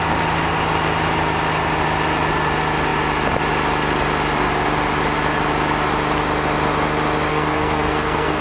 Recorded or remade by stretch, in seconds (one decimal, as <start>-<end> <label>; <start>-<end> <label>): 0.0-7.3 recorded; 7.3-8.4 remade